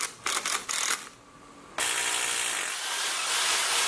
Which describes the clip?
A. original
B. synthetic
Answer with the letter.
A